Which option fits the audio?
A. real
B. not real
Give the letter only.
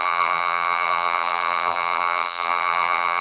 B